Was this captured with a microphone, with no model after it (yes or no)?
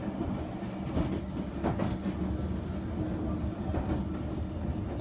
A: yes